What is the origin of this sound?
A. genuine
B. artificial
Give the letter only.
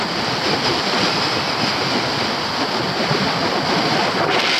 A